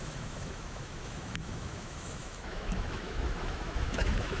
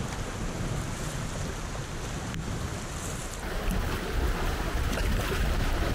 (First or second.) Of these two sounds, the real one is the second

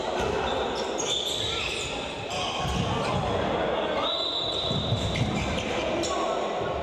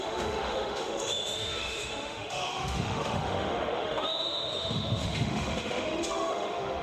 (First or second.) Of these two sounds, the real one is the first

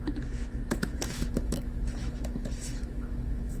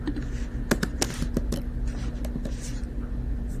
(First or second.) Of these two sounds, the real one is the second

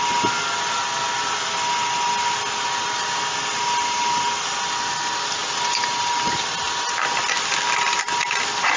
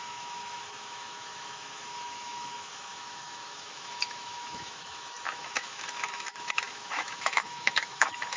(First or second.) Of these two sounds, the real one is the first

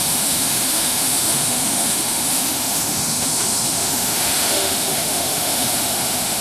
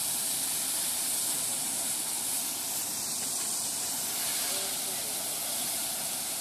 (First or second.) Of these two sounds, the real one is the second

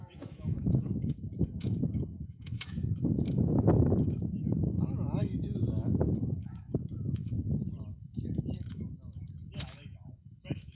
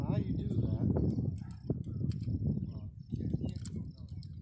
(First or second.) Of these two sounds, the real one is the second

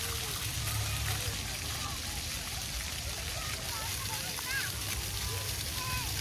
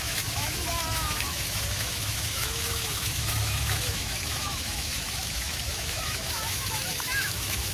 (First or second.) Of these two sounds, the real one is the first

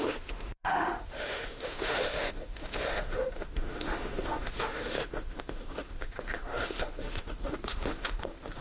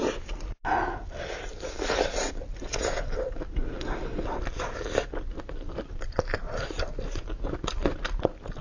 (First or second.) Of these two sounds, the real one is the second